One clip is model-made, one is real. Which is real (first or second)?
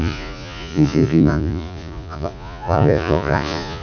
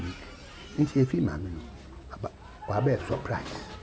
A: second